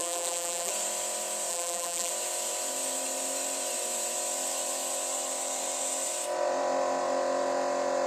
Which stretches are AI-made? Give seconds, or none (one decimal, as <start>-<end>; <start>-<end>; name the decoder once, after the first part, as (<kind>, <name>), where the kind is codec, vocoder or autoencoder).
0.0-0.7 (vocoder, BigVGAN v2); 1.5-2.1